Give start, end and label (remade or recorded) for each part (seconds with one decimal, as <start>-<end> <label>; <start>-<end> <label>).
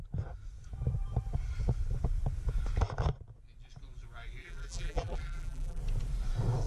0.0-4.4 recorded; 4.4-5.8 remade; 5.8-6.7 recorded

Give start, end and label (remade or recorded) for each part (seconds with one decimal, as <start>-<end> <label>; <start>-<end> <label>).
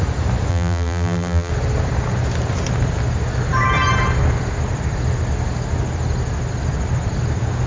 0.0-0.5 recorded; 0.5-1.5 remade; 1.5-7.7 recorded